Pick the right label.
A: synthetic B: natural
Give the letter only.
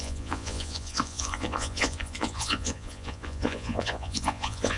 A